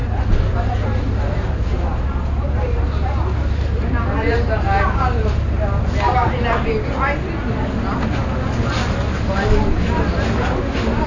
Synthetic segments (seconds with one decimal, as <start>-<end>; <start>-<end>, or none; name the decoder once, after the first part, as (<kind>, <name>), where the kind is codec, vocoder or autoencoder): none